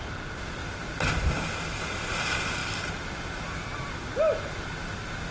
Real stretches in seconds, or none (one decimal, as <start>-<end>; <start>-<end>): 0.0-5.3